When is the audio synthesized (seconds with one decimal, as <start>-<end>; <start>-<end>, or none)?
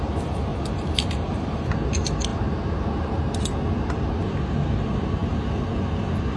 0.5-1.9